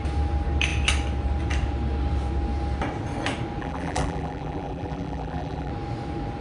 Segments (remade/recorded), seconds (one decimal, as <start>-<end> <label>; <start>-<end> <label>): 0.0-3.6 recorded; 3.6-5.7 remade; 5.7-6.4 recorded